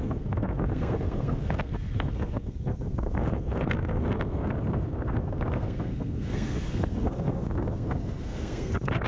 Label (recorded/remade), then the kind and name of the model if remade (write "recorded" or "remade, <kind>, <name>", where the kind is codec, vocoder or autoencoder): remade, codec, SNAC